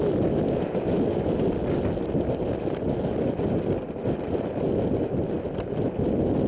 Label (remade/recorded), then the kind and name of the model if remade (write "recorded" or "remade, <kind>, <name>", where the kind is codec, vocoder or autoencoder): recorded